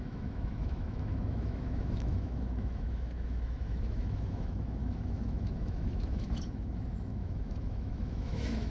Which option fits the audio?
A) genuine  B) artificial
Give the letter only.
B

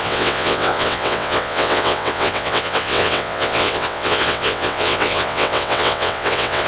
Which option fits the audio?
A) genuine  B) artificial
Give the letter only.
B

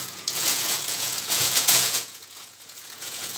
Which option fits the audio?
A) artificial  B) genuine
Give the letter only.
A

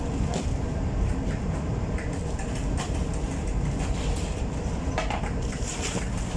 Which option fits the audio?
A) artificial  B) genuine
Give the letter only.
A